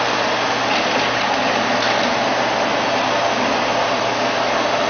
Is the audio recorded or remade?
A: recorded